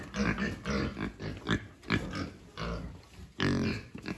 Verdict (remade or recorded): recorded